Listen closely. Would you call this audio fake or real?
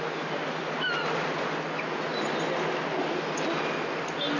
real